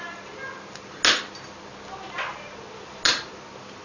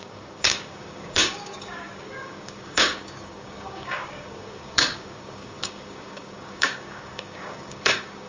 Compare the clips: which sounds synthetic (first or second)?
second